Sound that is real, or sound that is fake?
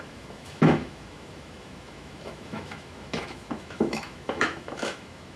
fake